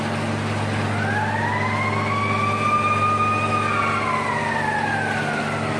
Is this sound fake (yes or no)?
no